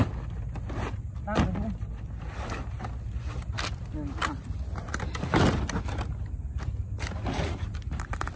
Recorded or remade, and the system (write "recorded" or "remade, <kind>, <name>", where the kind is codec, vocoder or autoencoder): recorded